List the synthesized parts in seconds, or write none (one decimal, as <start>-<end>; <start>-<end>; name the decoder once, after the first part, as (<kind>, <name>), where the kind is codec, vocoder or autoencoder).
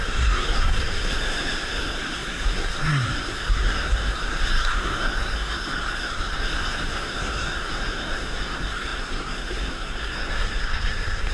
0.0-11.3 (codec, SNAC)